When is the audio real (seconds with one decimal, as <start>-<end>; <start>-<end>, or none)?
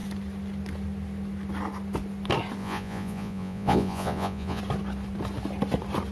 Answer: 0.0-2.6; 4.6-6.1